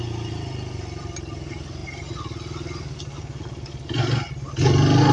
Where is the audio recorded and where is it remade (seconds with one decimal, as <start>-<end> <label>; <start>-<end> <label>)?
0.0-5.1 recorded